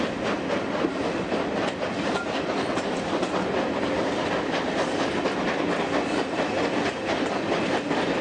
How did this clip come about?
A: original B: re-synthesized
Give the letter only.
A